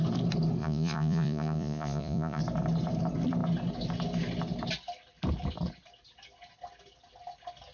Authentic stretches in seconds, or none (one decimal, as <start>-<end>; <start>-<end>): 0.0-0.6; 2.4-7.7